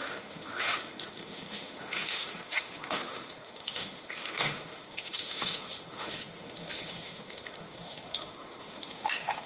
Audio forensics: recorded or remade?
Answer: remade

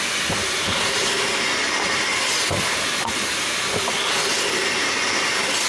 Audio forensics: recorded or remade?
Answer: recorded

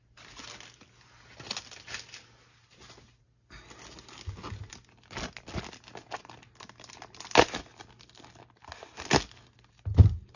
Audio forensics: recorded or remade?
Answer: recorded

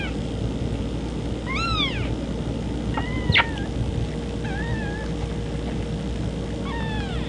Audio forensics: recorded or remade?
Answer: recorded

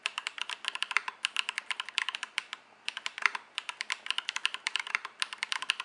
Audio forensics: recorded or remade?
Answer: recorded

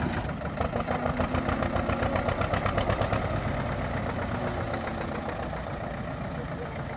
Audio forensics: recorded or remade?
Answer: recorded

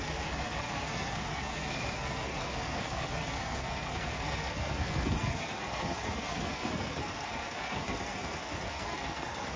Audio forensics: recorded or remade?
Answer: remade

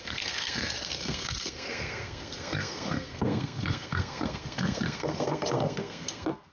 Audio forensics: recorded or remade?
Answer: remade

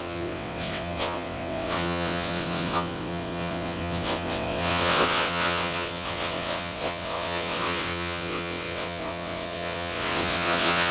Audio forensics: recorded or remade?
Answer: remade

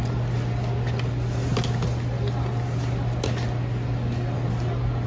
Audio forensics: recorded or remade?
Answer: recorded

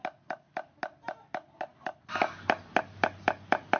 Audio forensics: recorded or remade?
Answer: recorded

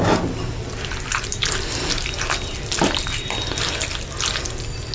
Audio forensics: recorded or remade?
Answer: recorded